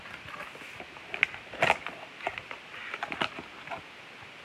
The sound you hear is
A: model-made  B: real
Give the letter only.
B